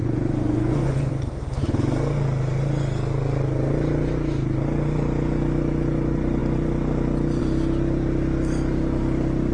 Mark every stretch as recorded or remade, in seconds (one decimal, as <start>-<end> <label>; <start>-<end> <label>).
0.0-1.1 remade; 1.1-9.5 recorded